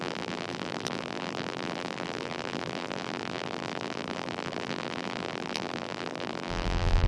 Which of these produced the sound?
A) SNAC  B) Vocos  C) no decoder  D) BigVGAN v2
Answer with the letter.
D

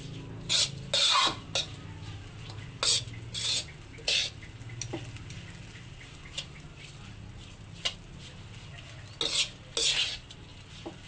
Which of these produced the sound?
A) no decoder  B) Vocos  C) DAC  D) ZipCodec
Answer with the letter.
A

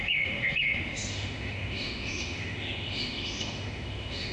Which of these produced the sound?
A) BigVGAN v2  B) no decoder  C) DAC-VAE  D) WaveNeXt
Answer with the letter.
C